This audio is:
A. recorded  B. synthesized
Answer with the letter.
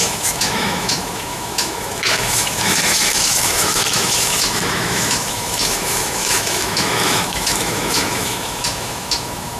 B